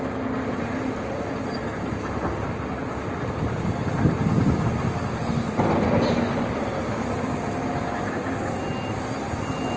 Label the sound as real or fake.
real